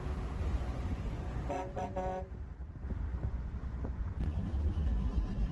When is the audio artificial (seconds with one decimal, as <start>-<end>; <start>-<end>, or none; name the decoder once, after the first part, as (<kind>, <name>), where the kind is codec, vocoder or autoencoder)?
0.5-2.3 (vocoder, Vocos); 3.1-4.8